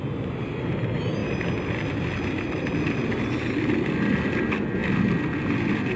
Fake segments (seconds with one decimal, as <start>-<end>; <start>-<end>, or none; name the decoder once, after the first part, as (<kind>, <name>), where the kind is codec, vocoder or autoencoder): none